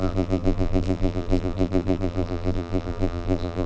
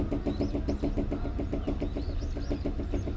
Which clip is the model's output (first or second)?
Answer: first